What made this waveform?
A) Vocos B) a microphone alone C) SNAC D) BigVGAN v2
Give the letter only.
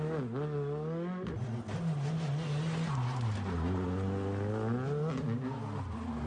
B